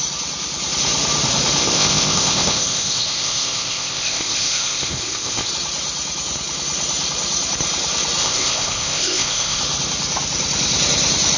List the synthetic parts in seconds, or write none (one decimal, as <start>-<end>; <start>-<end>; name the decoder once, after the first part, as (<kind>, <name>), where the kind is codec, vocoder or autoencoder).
1.6-5.5 (codec, ZipCodec); 8.2-9.6